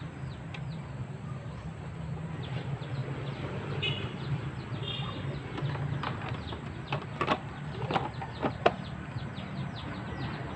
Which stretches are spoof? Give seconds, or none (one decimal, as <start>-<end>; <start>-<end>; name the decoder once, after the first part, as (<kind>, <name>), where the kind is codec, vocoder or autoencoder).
none